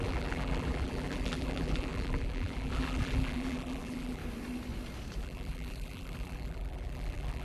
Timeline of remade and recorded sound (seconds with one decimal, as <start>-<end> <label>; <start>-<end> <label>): 0.0-4.2 remade; 4.2-5.2 recorded; 5.2-7.4 remade

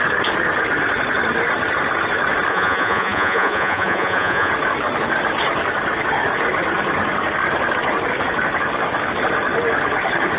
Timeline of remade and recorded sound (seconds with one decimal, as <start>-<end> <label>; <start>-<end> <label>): 0.0-2.5 recorded; 2.5-4.5 remade; 4.5-10.4 recorded

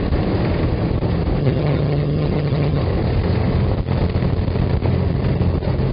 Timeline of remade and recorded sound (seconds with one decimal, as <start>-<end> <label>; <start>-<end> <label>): 0.0-1.4 recorded; 1.4-2.8 remade; 2.8-5.9 recorded

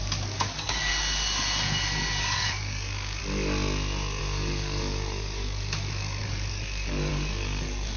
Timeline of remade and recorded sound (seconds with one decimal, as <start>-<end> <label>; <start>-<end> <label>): 0.0-0.9 remade; 0.9-2.2 recorded; 2.2-3.2 remade; 3.2-4.2 recorded; 4.2-8.0 remade

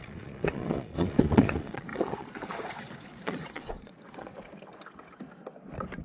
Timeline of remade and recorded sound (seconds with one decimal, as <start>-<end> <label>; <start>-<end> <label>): 0.0-4.3 remade; 4.3-6.0 recorded

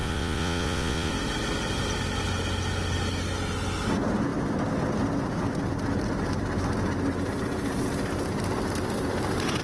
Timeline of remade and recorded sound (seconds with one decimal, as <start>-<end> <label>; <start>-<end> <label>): 0.0-1.1 remade; 1.1-9.6 recorded